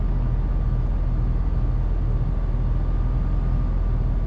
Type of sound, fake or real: real